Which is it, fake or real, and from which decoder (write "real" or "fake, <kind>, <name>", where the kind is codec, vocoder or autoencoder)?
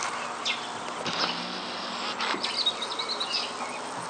real